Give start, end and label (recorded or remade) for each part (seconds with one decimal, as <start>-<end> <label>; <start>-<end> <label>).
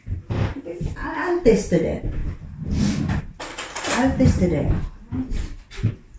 0.0-6.2 recorded